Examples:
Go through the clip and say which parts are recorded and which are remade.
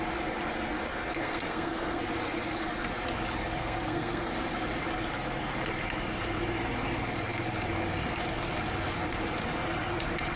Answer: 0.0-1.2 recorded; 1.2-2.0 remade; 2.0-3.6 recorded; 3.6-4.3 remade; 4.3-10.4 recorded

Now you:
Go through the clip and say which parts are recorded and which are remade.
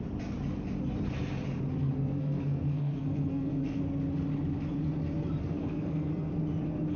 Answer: 0.0-1.8 recorded; 1.8-3.8 remade; 3.8-5.4 recorded; 5.4-6.3 remade; 6.3-7.0 recorded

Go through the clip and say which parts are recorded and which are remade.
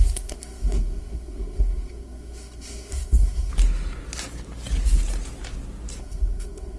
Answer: 0.0-3.5 remade; 3.5-6.0 recorded; 6.0-6.8 remade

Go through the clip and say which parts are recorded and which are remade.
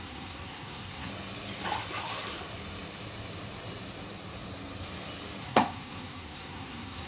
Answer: 0.0-1.1 remade; 1.1-5.4 recorded; 5.4-7.1 remade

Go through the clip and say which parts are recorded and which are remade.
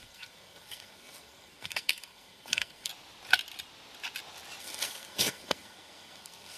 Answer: 0.0-2.9 remade; 2.9-4.6 recorded; 4.6-6.6 remade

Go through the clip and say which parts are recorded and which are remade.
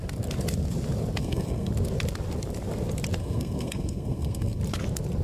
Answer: 0.0-1.2 recorded; 1.2-1.7 remade; 1.7-3.2 recorded; 3.2-4.6 remade; 4.6-5.2 recorded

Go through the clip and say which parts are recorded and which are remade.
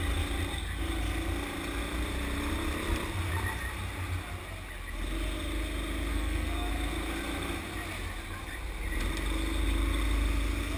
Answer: 0.0-6.1 recorded; 6.1-6.7 remade; 6.7-10.8 recorded